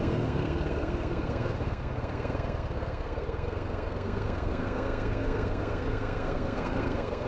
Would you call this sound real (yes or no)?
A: no